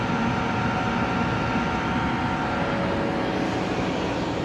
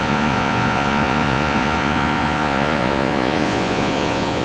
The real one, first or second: first